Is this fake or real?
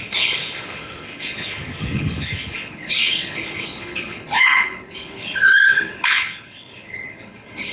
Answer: fake